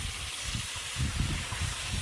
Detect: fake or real real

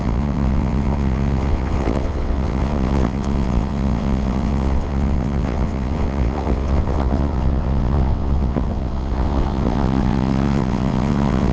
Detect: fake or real fake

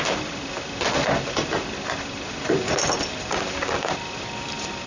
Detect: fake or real real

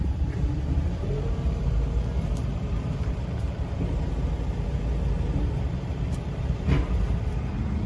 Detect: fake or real fake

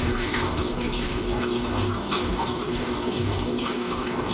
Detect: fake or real fake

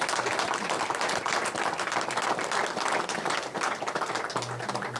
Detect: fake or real real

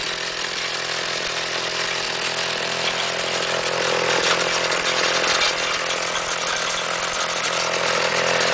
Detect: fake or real real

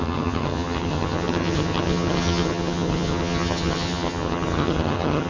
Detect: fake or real fake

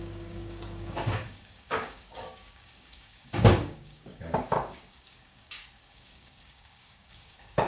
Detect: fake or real fake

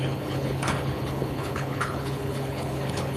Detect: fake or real fake